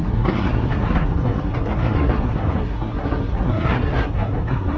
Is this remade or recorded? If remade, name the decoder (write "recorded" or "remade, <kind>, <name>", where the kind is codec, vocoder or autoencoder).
remade, codec, SNAC